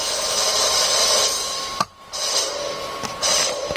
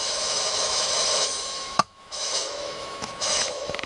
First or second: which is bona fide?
first